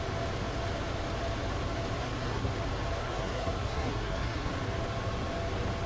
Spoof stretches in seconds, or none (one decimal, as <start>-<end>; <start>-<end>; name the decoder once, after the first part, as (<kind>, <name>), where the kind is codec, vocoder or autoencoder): 2.0-2.5 (codec, SNAC); 3.0-4.5